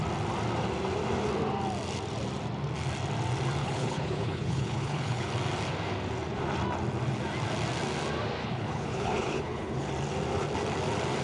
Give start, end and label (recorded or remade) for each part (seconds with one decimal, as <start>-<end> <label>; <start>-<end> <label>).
0.0-3.6 recorded; 3.6-5.3 remade; 5.3-8.4 recorded; 8.4-9.9 remade; 9.9-11.2 recorded

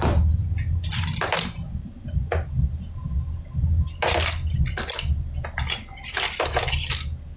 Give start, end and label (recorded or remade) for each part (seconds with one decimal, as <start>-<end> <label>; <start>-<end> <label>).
0.0-7.4 recorded

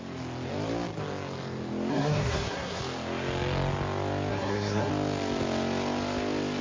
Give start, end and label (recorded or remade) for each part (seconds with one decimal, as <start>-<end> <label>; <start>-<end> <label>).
0.0-1.9 recorded; 1.9-2.8 remade; 2.8-4.3 recorded; 4.3-4.9 remade; 4.9-6.6 recorded

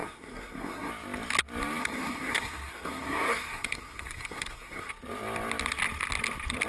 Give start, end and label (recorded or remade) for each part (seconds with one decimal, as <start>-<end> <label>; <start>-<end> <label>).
0.0-0.9 remade; 0.9-1.8 recorded; 1.8-4.9 remade; 4.9-6.7 recorded

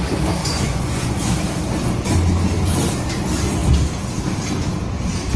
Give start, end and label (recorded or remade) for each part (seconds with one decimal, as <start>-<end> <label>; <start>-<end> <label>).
0.0-0.4 recorded; 0.4-1.3 remade; 1.3-5.4 recorded

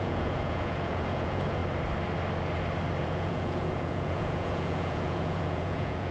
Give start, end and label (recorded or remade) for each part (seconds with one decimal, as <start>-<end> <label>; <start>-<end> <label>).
0.0-1.6 remade; 1.6-3.0 recorded; 3.0-6.1 remade

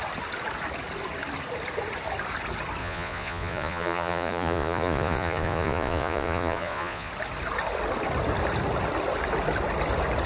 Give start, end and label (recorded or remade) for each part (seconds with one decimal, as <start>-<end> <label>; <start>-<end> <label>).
0.0-2.8 recorded; 2.8-7.1 remade; 7.1-10.3 recorded

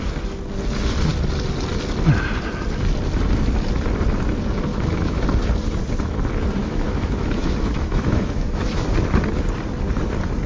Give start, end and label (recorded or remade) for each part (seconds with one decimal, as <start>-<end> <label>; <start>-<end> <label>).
0.0-4.7 recorded; 4.7-5.2 remade; 5.2-6.6 recorded; 6.6-8.9 remade; 8.9-10.5 recorded